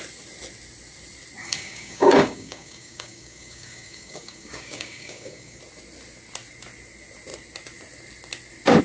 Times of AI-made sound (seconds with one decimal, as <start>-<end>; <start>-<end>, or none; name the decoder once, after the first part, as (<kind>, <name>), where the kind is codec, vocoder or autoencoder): 1.4-5.6 (codec, DAC)